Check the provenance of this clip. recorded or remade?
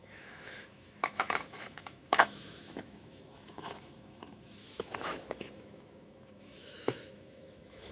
remade